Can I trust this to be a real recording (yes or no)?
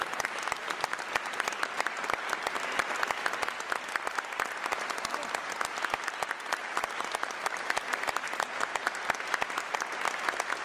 yes